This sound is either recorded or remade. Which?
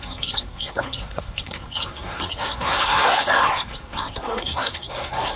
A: remade